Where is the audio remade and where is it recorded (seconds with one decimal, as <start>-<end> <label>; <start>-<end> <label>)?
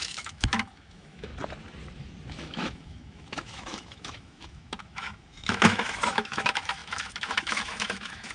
0.0-1.3 remade; 1.3-2.3 recorded; 2.3-8.3 remade